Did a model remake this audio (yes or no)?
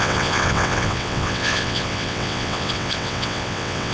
yes